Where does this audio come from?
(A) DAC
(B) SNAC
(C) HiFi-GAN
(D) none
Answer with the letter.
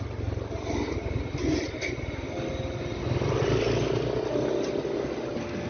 D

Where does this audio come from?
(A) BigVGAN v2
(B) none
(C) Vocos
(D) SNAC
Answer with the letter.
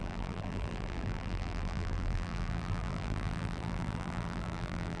A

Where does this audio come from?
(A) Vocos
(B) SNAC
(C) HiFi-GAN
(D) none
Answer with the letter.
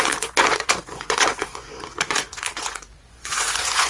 A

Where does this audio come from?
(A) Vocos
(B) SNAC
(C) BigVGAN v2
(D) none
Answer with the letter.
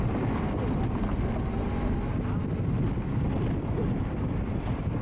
D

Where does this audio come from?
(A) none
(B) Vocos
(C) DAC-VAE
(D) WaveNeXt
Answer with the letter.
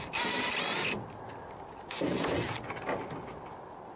A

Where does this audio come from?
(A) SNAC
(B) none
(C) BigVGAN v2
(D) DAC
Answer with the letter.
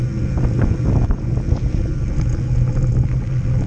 B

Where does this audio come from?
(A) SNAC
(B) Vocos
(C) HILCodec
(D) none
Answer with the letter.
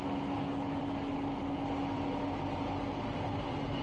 D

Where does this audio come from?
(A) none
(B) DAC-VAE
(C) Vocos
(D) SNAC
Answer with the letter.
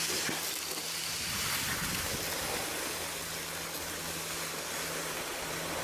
A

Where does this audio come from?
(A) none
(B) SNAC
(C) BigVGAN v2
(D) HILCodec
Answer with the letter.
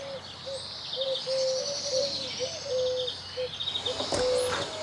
A